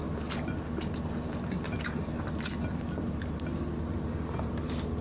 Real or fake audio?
real